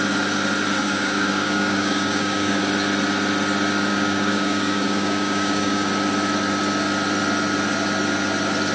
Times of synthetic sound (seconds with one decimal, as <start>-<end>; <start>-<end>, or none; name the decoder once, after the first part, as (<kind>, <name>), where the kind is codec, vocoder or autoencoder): 0.8-2.6 (codec, DAC); 3.9-5.9